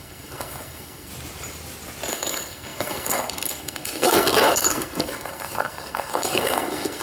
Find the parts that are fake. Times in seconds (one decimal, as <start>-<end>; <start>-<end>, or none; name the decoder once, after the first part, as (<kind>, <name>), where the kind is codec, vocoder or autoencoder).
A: 0.0-1.1 (codec, SNAC); 2.1-7.0